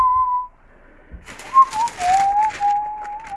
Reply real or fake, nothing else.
real